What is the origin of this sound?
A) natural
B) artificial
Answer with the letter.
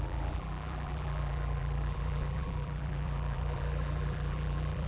B